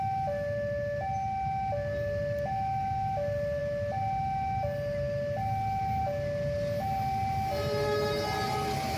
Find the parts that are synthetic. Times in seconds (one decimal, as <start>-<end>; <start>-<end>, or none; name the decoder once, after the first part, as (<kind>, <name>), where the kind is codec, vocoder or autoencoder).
none